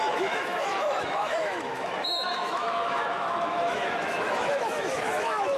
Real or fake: fake